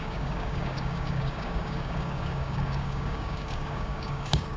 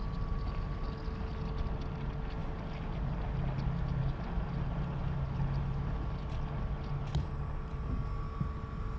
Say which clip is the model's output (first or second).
first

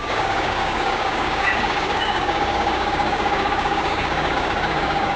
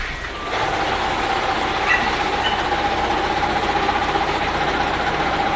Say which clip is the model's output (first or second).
first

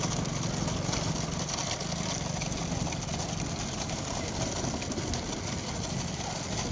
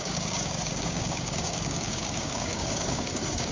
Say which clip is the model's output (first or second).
second